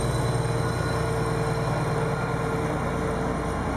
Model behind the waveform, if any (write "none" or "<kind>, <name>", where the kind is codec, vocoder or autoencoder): none